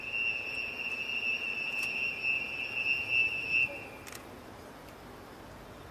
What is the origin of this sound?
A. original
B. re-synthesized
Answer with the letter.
A